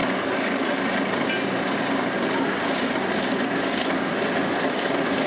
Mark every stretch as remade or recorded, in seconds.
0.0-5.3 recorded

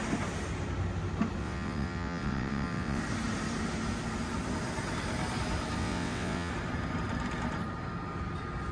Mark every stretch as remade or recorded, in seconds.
0.0-1.4 recorded; 1.4-3.0 remade; 3.0-5.8 recorded; 5.8-6.5 remade; 6.5-8.7 recorded

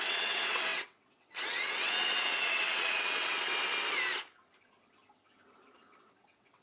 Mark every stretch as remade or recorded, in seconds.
0.0-3.5 remade; 3.5-6.0 recorded; 6.0-6.6 remade

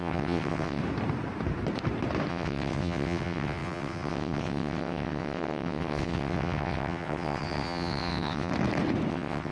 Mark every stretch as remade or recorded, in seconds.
0.0-0.8 remade; 0.8-2.3 recorded; 2.3-8.5 remade; 8.5-9.1 recorded; 9.1-9.5 remade

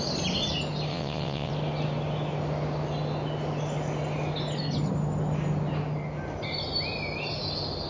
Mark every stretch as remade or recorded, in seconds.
0.0-0.9 recorded; 0.9-1.5 remade; 1.5-7.9 recorded

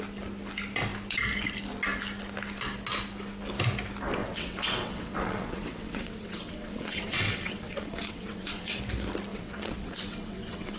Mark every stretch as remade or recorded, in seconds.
0.0-4.2 recorded; 4.2-8.8 remade; 8.8-9.3 recorded; 9.3-10.8 remade

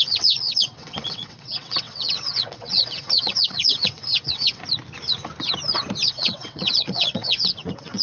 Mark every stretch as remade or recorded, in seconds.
0.0-4.6 remade; 4.6-6.1 recorded; 6.1-8.0 remade